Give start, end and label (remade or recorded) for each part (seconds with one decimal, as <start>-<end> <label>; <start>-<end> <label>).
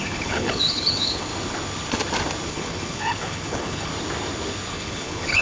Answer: 0.0-1.3 remade; 1.3-2.5 recorded; 2.5-3.9 remade; 3.9-4.7 recorded; 4.7-5.4 remade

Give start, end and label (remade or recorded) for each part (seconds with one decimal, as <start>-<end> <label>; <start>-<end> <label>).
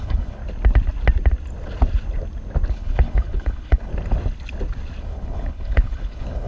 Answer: 0.0-0.4 remade; 0.4-2.7 recorded; 2.7-3.9 remade; 3.9-5.0 recorded; 5.0-6.5 remade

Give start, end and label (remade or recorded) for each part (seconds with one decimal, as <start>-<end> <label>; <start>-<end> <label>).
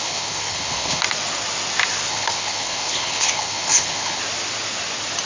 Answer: 0.0-1.0 remade; 1.0-2.1 recorded; 2.1-4.2 remade; 4.2-5.3 recorded